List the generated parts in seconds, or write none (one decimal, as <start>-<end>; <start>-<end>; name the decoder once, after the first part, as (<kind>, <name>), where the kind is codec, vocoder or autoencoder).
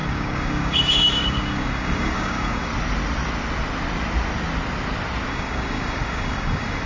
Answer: 0.0-2.7 (codec, DAC); 5.3-6.9